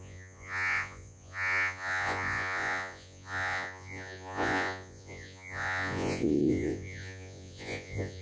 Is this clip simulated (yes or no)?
yes